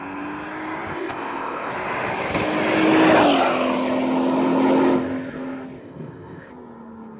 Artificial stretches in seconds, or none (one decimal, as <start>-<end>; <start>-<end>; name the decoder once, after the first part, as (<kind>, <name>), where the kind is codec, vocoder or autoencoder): 0.9-1.7 (codec, ZipCodec); 5.8-6.5